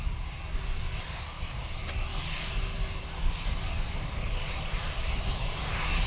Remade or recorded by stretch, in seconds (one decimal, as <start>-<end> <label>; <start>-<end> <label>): 0.0-6.1 recorded